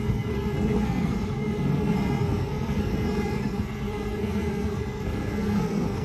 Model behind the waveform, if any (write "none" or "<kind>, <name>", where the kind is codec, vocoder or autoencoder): codec, SNAC